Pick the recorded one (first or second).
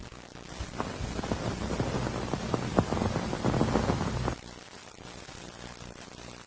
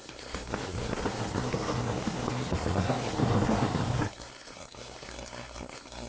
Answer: first